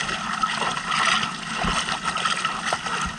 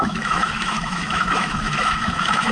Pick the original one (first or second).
first